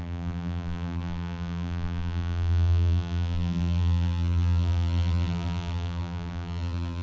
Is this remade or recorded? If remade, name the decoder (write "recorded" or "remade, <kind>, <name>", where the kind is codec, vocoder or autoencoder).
remade, vocoder, BigVGAN v2